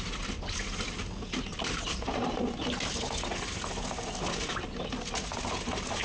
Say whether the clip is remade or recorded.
recorded